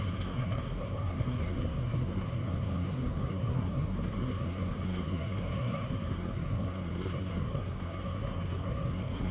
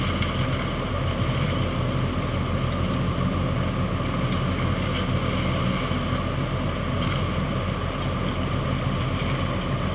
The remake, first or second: first